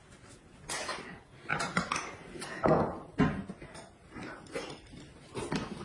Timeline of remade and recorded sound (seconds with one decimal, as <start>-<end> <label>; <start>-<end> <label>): 0.0-5.8 recorded